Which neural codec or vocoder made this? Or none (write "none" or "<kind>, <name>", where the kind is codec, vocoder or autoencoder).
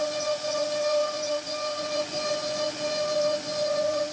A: vocoder, Vocos